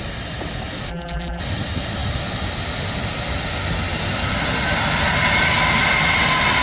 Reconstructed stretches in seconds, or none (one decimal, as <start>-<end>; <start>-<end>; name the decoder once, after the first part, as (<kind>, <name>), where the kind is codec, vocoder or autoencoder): 0.9-1.4 (vocoder, BigVGAN v2)